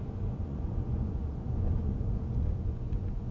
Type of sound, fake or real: fake